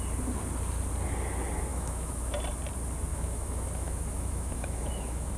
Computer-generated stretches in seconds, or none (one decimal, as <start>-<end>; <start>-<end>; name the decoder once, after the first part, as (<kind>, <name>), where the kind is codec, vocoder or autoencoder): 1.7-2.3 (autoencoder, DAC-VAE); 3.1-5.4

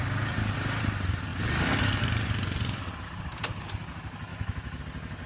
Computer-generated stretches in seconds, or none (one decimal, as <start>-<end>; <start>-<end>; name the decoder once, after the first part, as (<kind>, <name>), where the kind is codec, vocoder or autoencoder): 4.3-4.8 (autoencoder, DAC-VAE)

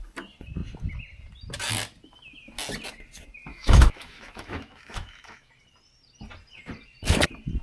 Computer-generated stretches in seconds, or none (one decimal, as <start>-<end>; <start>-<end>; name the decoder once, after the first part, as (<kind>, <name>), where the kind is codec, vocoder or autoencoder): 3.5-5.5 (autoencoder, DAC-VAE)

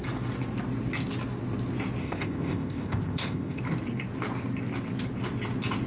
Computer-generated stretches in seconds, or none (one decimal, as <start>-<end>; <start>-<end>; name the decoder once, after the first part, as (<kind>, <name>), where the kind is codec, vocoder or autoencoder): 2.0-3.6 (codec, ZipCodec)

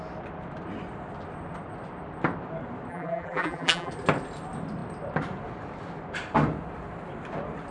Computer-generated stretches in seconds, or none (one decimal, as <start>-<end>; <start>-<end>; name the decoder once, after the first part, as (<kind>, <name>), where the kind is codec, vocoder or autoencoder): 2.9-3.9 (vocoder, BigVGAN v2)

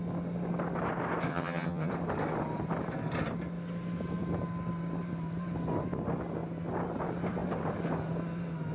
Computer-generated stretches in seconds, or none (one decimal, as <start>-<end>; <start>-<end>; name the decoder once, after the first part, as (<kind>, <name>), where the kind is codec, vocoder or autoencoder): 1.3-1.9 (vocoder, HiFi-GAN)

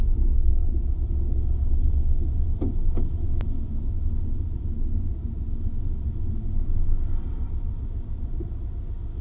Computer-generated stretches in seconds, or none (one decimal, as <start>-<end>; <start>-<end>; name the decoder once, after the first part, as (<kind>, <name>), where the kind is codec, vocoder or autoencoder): none

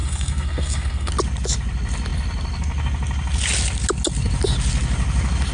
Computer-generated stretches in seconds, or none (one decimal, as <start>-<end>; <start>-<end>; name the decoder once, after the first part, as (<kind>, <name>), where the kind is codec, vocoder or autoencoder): 0.0-1.1 (codec, SNAC)